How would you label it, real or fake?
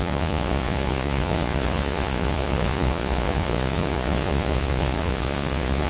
fake